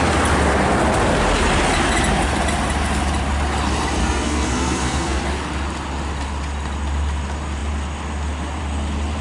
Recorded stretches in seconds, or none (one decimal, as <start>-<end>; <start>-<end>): 0.0-4.0; 5.2-9.2